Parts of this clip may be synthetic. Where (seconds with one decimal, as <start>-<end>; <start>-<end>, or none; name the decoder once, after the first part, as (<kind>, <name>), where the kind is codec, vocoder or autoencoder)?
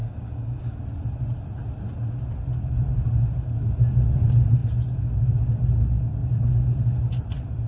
0.0-0.8 (codec, DAC)